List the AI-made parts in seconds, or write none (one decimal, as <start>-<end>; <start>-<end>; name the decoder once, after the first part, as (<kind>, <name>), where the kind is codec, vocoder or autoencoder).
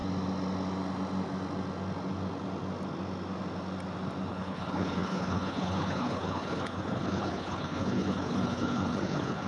4.3-9.5 (codec, HILCodec)